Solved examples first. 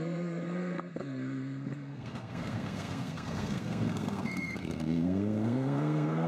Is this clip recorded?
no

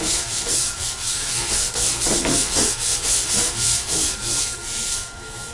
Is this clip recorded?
no